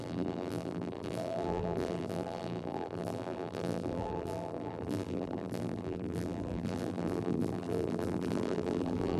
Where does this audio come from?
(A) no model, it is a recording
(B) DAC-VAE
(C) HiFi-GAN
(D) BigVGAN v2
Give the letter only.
D